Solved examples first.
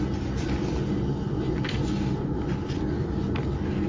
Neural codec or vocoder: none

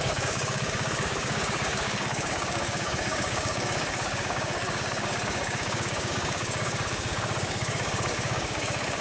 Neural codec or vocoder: codec, DAC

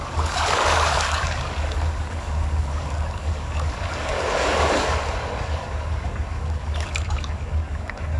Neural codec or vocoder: codec, DAC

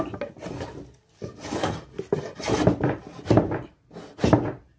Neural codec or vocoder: none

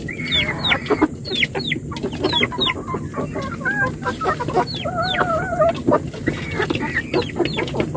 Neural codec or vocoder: none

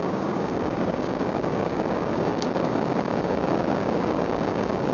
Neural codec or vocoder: codec, DAC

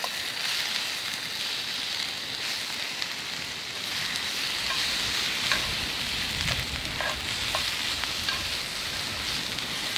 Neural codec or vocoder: none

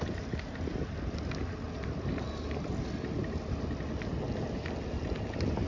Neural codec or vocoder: none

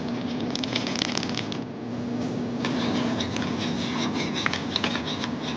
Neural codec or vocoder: none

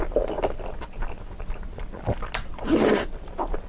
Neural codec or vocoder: none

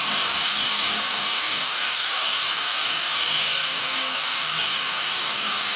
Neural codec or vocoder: codec, DAC